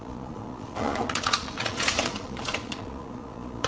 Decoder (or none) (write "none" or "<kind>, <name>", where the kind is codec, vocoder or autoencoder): vocoder, Vocos